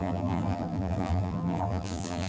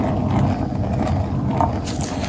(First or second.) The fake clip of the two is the first